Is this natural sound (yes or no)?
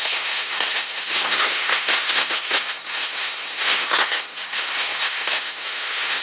no